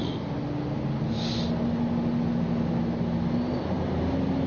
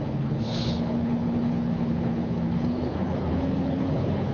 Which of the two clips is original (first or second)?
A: first